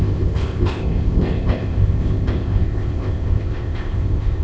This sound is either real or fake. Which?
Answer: fake